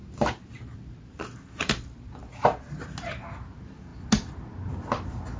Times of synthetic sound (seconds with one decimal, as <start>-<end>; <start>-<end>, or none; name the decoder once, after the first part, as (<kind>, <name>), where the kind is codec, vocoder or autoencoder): none